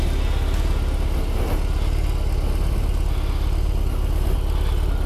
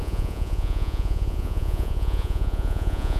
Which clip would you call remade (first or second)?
second